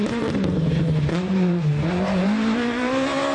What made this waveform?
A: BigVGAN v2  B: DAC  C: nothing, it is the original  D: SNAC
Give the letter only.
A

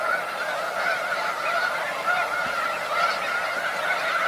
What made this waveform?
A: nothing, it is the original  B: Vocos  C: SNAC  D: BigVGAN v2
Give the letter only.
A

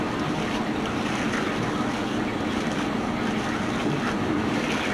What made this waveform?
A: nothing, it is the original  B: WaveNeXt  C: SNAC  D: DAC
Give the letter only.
A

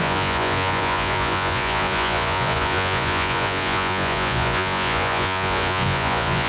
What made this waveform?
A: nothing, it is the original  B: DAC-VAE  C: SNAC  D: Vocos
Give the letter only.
D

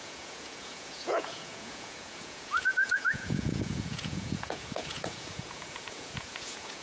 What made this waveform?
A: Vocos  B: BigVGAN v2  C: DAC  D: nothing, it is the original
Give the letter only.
A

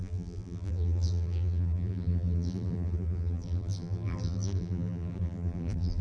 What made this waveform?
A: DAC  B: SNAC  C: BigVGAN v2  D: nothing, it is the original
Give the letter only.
C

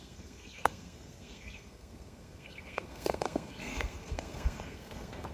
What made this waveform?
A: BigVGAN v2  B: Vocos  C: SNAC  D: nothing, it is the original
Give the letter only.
C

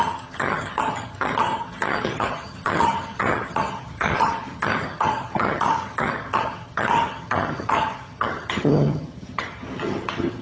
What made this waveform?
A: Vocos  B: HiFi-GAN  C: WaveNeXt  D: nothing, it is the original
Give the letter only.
B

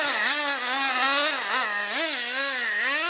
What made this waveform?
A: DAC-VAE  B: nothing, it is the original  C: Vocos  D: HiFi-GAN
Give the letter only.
B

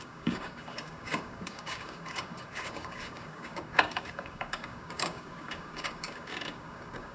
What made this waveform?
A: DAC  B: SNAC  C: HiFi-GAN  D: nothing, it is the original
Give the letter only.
A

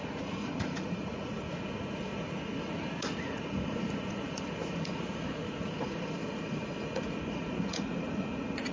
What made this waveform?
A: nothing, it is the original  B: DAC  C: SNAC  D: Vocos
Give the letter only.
D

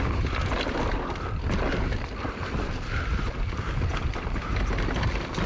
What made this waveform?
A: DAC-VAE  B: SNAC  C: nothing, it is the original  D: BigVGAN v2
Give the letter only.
C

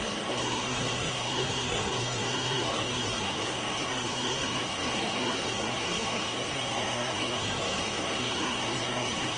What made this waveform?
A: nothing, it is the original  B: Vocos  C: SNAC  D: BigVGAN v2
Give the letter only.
C